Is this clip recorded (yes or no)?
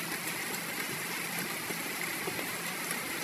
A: yes